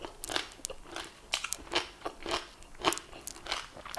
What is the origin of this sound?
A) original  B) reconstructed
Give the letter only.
A